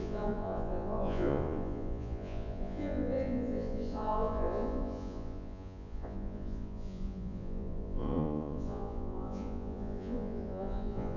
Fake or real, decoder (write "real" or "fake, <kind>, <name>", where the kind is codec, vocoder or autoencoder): fake, vocoder, Vocos